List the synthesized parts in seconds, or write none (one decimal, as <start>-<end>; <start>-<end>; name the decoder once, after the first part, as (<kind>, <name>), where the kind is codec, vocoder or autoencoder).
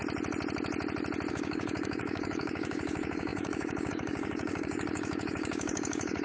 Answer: 1.3-6.2 (codec, DAC)